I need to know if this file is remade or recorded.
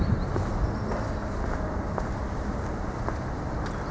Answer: recorded